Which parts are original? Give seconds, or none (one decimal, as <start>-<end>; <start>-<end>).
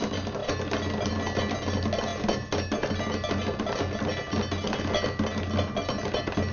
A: 0.0-6.5